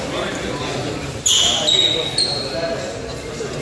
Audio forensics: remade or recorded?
recorded